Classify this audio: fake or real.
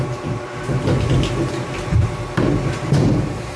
real